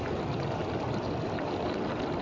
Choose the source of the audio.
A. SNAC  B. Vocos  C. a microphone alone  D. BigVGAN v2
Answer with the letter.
C